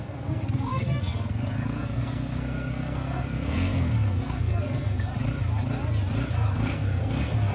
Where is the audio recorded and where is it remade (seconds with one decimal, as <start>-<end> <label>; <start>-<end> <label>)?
0.0-5.1 remade; 5.1-6.3 recorded; 6.3-7.5 remade